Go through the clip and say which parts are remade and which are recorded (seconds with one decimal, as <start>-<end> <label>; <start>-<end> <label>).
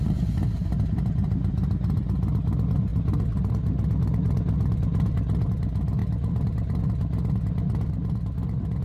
0.0-0.6 recorded; 0.6-2.0 remade; 2.0-6.0 recorded; 6.0-6.8 remade; 6.8-8.8 recorded